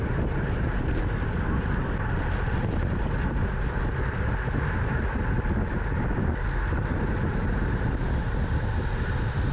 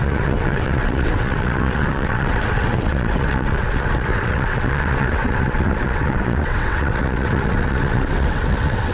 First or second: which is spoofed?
second